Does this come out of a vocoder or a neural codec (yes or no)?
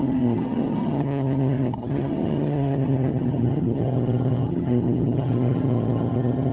yes